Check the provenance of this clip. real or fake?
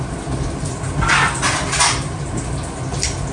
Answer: real